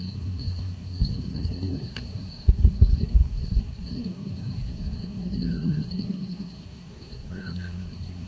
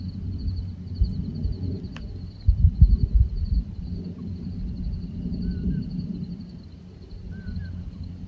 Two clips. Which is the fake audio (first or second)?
first